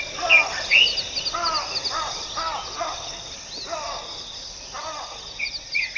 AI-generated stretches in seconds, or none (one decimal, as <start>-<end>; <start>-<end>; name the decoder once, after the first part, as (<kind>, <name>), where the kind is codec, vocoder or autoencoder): none